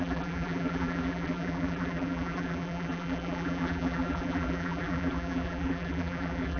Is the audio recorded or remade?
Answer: remade